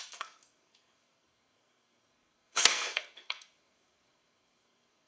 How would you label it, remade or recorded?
remade